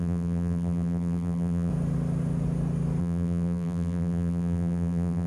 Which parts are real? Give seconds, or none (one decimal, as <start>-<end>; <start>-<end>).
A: 1.7-3.0

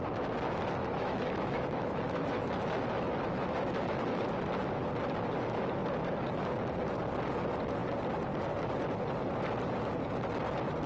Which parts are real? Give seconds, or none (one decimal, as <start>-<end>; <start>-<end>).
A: 0.0-0.8; 4.2-10.9

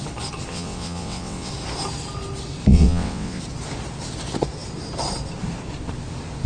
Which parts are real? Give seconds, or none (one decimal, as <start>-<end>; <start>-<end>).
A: 0.0-0.5; 1.5-2.7; 3.4-6.5

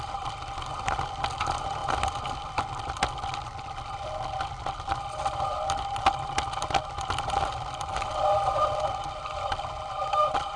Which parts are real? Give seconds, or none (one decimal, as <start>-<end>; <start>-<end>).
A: 0.0-10.6

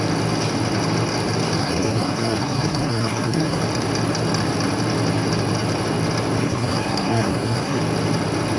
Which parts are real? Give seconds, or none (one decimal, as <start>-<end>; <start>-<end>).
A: 0.0-1.6; 3.6-6.4; 7.8-8.6

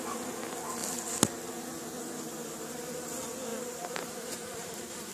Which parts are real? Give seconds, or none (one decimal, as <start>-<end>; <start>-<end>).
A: 0.0-3.5

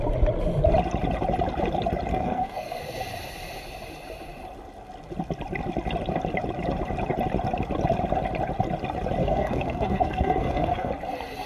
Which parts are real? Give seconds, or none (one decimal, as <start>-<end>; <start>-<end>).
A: 0.0-2.1; 2.8-9.2; 10.9-11.5

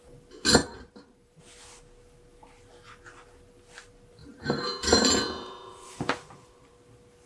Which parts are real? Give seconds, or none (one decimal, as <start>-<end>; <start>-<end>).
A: 0.0-0.6; 1.4-4.2; 6.7-7.3